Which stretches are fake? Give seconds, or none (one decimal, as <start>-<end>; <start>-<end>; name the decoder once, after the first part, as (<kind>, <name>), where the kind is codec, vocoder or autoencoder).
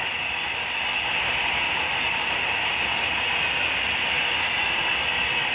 1.9-2.6 (vocoder, BigVGAN v2)